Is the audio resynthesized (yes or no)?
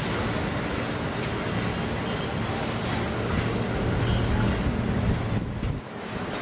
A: no